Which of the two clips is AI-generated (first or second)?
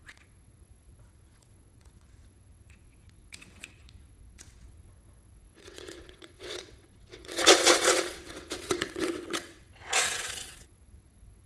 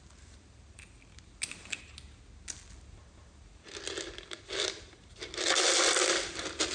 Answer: first